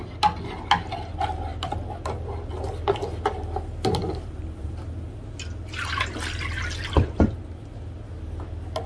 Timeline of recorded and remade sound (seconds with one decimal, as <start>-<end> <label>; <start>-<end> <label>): 0.0-8.9 recorded